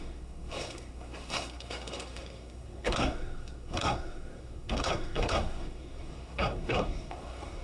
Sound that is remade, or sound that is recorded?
remade